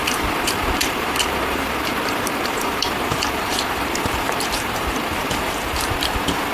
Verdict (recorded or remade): remade